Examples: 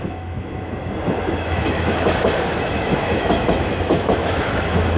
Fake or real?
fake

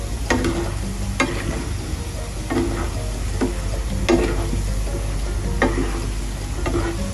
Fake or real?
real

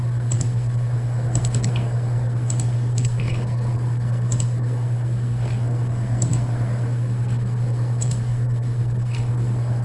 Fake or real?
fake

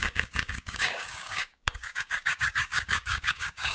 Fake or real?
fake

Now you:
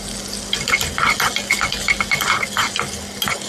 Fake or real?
real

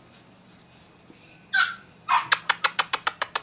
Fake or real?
fake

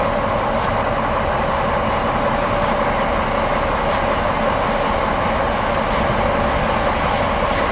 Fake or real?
real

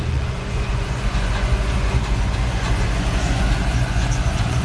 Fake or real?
fake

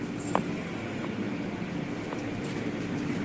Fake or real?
real